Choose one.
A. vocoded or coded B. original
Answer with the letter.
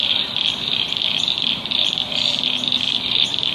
B